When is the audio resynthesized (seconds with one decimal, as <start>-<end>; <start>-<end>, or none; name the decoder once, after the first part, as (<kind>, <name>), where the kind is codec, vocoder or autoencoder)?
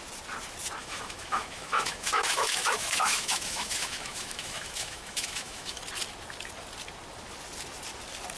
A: 0.8-5.8 (autoencoder, DAC-VAE)